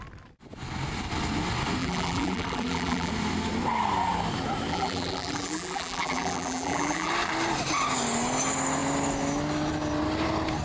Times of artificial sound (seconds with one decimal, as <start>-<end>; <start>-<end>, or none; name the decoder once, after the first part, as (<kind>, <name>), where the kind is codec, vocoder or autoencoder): 1.8-3.1 (vocoder, BigVGAN v2); 4.7-7.1